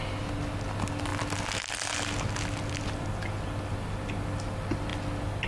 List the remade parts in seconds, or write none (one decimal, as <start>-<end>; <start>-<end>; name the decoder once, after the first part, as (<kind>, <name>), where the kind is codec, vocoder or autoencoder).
none